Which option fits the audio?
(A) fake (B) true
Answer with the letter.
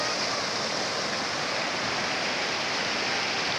B